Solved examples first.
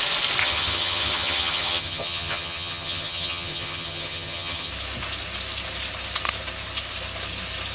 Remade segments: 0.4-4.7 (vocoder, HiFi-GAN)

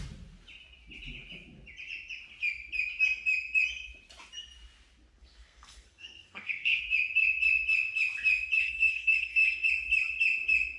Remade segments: 5.2-6.8 (codec, SNAC); 8.6-9.7

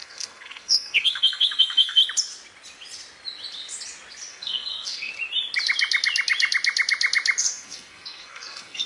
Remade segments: 0.0-2.0 (codec, SNAC); 4.3-5.1; 7.4-8.9